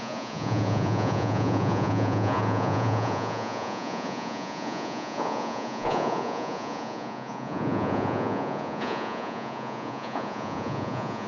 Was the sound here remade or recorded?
remade